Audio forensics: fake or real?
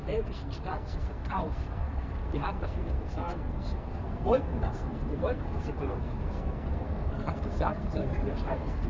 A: fake